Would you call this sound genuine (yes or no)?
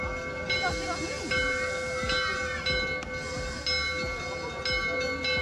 yes